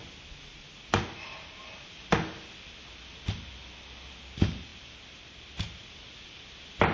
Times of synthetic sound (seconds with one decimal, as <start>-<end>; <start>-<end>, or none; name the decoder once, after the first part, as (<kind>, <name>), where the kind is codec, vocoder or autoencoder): none